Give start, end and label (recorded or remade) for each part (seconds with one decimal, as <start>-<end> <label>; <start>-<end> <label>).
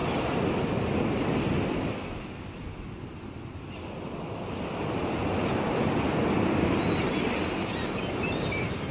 0.0-8.9 recorded